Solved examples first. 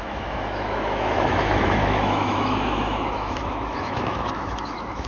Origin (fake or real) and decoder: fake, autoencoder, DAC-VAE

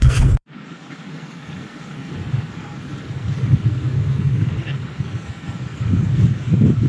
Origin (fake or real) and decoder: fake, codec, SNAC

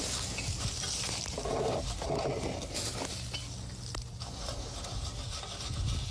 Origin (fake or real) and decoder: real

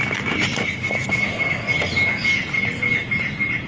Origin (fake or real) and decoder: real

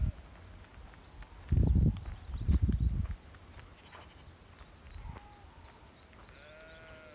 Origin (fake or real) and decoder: real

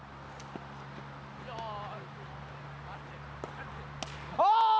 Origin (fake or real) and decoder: real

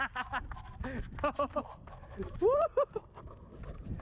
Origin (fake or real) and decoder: real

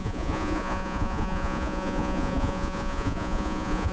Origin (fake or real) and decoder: fake, vocoder, Vocos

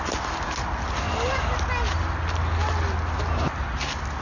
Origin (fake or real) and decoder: real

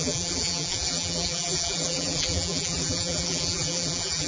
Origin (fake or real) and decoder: fake, vocoder, BigVGAN v2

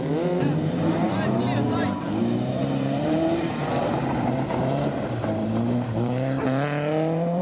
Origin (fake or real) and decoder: fake, vocoder, BigVGAN v2